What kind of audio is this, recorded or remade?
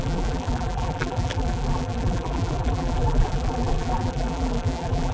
remade